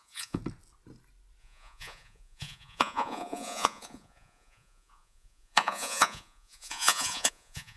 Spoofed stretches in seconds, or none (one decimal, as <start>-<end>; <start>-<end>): 0.0-0.4; 1.4-7.8